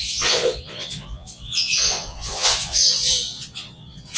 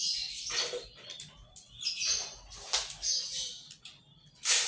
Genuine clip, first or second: second